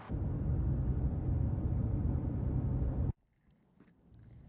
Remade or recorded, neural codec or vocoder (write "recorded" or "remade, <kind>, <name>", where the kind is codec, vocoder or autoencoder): recorded